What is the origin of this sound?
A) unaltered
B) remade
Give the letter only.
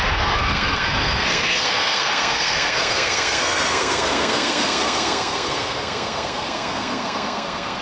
B